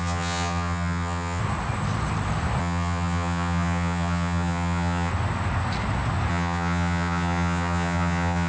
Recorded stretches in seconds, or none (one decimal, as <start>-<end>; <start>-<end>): 1.4-2.6; 5.1-6.3